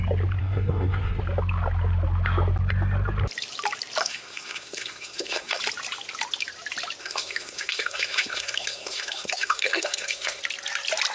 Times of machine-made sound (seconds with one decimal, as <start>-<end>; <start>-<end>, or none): 0.4-1.2; 4.0-5.6; 7.0-10.4